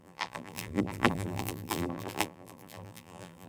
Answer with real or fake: fake